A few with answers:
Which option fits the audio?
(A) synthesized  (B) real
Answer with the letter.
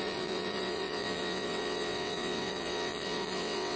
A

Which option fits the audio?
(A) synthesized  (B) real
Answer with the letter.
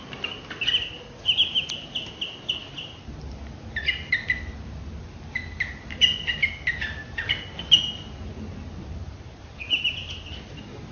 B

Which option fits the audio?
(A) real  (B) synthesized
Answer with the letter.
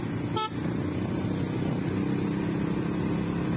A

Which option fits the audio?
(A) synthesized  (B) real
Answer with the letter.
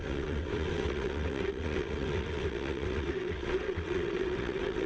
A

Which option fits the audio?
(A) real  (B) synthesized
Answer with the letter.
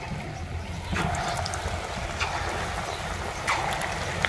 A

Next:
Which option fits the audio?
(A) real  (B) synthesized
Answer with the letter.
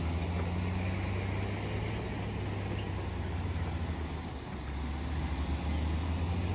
A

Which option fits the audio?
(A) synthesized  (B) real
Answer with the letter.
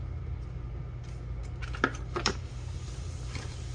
B